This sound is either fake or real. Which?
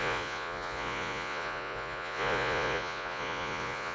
fake